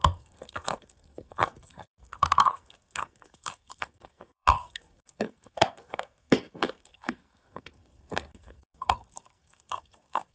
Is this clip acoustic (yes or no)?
no